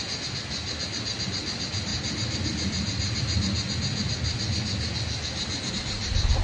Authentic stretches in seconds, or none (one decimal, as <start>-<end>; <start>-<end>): 0.0-6.4